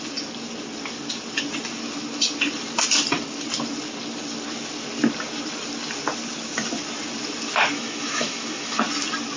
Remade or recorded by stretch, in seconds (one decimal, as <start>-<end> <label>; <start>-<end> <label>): 0.0-7.7 recorded; 7.7-8.8 remade; 8.8-9.4 recorded